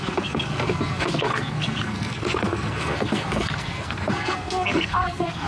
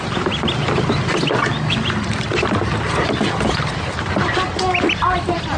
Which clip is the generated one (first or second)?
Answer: first